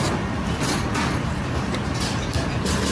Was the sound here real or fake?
real